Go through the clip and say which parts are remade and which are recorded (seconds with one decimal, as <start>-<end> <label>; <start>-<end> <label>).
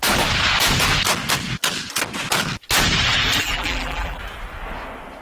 0.0-3.4 recorded; 3.4-4.2 remade; 4.2-5.2 recorded